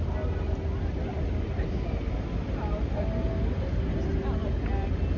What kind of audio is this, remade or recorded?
recorded